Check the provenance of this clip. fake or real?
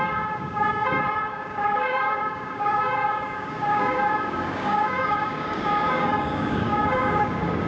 fake